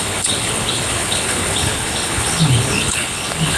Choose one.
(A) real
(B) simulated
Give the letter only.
B